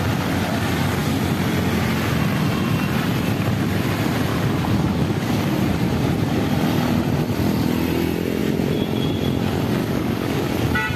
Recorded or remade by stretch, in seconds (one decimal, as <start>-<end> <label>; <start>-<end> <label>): 0.0-4.3 recorded; 4.3-5.4 remade; 5.4-9.8 recorded; 9.8-10.5 remade; 10.5-11.0 recorded